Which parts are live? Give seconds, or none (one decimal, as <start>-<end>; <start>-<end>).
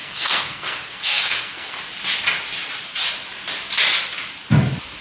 1.8-5.0